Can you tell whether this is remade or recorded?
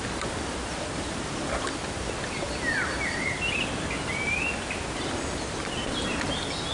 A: recorded